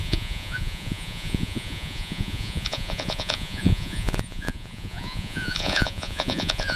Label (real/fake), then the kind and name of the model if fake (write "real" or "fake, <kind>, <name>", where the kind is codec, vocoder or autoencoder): fake, vocoder, Vocos